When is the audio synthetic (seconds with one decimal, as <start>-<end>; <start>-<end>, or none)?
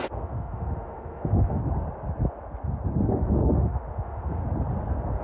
0.0-1.6; 3.1-4.4